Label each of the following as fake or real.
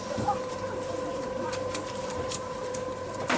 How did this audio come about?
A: fake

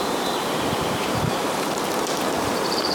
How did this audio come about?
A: fake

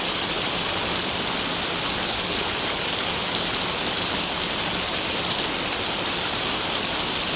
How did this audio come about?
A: real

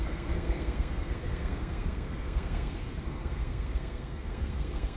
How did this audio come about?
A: fake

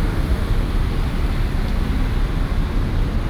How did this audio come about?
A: real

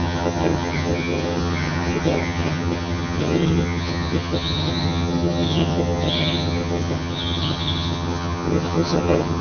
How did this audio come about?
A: fake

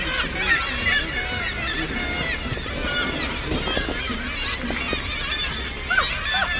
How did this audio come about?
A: real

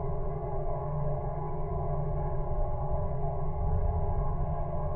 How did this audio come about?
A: fake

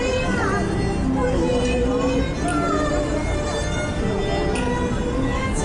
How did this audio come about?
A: real